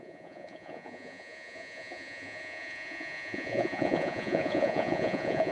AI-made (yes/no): yes